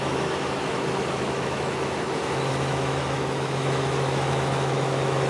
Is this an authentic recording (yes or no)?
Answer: no